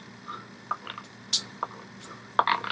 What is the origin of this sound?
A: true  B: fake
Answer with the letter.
A